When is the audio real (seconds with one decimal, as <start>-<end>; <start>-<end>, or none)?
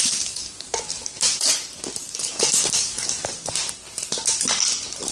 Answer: 1.1-2.0; 3.3-5.1